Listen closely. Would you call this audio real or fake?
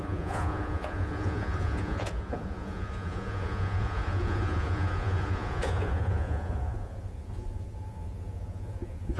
fake